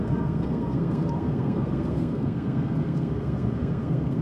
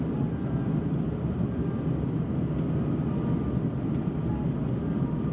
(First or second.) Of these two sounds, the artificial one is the first